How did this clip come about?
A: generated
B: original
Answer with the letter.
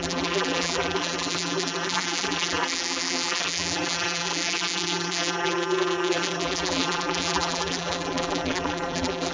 A